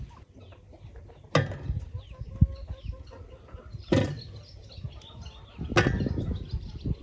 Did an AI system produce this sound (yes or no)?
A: no